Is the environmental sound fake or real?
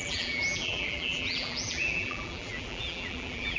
fake